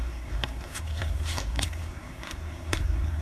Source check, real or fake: fake